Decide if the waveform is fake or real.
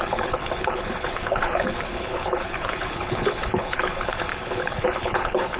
fake